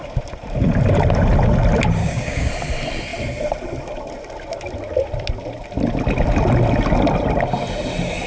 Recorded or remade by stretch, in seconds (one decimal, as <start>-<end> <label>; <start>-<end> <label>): 0.0-2.0 recorded; 2.0-2.5 remade; 2.5-8.3 recorded